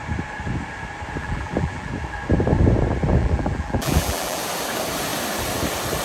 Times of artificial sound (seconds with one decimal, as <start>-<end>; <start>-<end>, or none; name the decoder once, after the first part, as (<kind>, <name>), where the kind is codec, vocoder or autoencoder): 1.2-1.9 (vocoder, BigVGAN v2); 3.2-4.4